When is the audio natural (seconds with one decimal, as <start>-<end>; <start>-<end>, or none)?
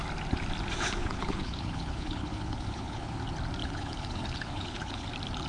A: 0.0-1.0; 3.2-3.6; 5.1-5.5